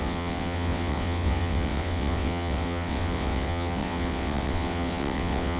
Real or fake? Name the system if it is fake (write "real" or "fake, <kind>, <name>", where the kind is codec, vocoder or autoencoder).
fake, vocoder, WaveNeXt